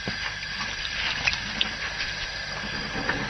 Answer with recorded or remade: recorded